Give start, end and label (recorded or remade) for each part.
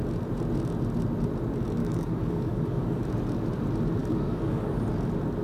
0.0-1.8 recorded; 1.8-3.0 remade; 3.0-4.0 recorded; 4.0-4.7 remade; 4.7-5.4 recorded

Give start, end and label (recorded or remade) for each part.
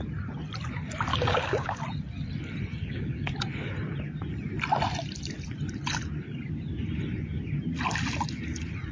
0.0-1.1 recorded; 1.1-1.8 remade; 1.8-2.7 recorded; 2.7-3.3 remade; 3.3-8.9 recorded